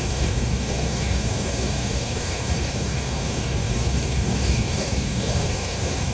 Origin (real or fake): fake